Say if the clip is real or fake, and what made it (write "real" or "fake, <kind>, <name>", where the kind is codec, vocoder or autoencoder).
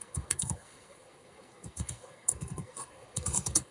fake, codec, SNAC